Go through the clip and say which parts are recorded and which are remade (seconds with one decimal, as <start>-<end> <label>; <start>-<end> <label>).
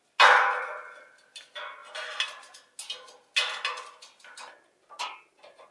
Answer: 0.0-5.7 recorded